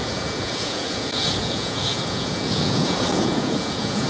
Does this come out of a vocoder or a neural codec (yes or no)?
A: yes